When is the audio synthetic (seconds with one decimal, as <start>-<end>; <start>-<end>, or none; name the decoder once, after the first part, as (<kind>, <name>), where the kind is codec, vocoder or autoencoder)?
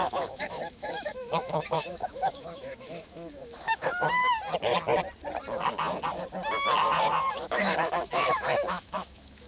0.0-4.2 (autoencoder, DAC-VAE); 7.3-9.5